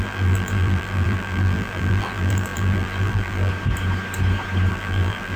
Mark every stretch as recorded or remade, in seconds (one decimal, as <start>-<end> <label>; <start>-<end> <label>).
0.0-3.5 remade; 3.5-4.7 recorded; 4.7-5.4 remade